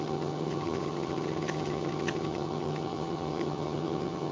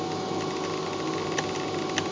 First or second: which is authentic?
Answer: second